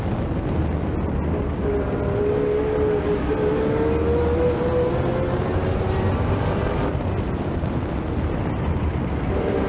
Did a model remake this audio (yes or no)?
no